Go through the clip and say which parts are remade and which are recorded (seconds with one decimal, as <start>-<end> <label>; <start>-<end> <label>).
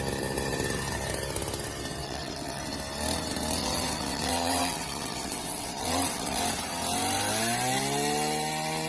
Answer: 0.0-2.0 recorded; 2.0-2.6 remade; 2.6-3.6 recorded; 3.6-6.4 remade; 6.4-8.9 recorded